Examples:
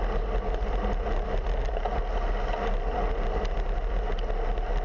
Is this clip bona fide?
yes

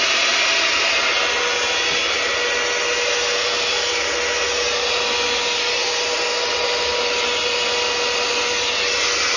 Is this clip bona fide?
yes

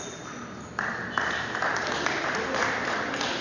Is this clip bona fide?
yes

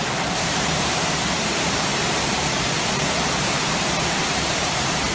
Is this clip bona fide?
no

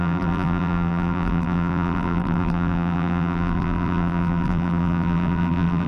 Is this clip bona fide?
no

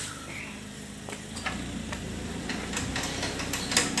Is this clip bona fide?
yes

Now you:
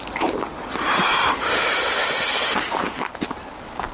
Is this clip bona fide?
no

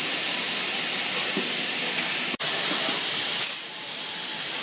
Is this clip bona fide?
no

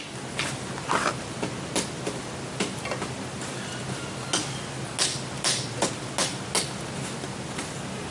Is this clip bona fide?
yes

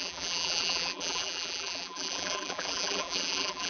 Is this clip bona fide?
no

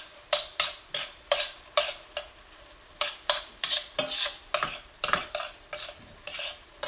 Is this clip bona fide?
no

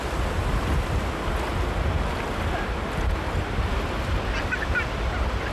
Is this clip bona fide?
yes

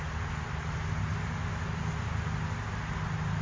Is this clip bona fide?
yes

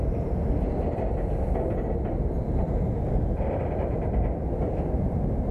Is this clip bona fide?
yes